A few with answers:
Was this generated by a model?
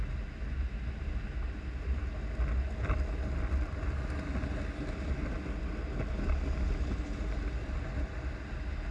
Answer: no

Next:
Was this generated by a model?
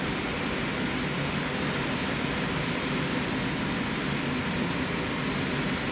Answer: no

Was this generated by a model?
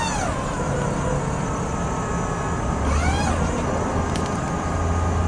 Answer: no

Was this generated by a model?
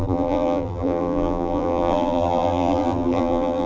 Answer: yes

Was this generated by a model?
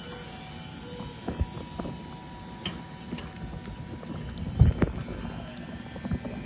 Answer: no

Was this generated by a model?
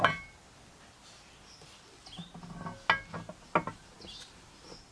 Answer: no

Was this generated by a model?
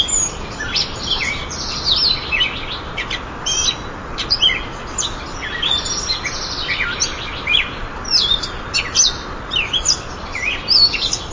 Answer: no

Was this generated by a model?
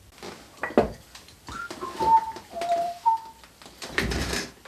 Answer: no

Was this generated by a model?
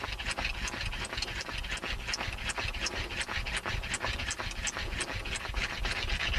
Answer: no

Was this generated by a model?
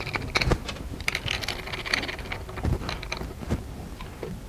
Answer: no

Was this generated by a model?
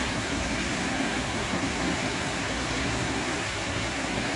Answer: yes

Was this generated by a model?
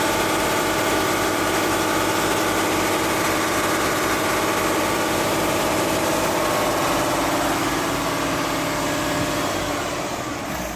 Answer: no